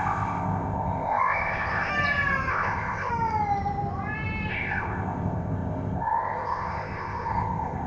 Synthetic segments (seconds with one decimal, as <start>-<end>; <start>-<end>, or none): 0.0-1.9; 2.5-3.1; 4.5-7.9